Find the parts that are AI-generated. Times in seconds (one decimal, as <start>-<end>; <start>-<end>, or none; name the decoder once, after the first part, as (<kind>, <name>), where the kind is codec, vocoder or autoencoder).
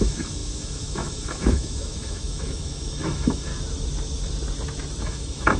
0.0-3.5 (autoencoder, DAC-VAE); 5.0-5.6